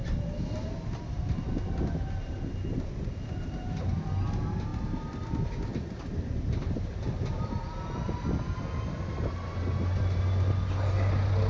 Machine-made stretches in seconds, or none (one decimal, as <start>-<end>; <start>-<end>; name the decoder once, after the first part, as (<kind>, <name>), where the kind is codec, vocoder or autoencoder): none